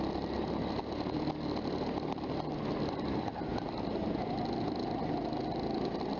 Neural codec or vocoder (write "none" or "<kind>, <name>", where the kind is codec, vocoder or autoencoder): none